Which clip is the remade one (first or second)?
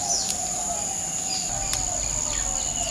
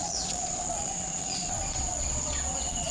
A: second